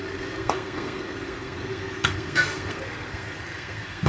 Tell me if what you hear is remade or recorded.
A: remade